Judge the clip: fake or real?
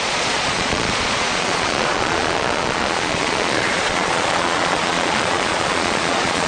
fake